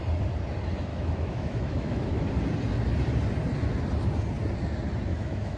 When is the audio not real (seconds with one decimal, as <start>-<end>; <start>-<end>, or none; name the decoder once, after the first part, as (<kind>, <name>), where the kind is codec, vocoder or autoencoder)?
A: 0.9-2.3 (autoencoder, DAC-VAE); 5.1-5.6